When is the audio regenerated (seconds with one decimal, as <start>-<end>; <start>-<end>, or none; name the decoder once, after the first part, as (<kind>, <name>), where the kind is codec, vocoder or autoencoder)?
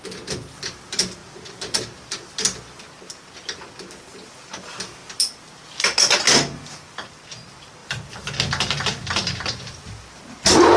none